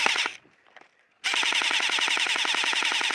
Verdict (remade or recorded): recorded